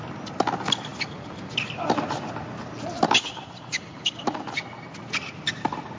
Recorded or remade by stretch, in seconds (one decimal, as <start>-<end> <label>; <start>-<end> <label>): 0.0-6.0 recorded